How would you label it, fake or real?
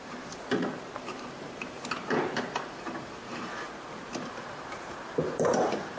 fake